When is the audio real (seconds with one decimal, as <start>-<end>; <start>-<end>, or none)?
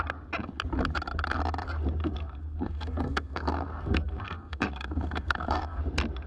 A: 0.0-2.0; 5.8-6.3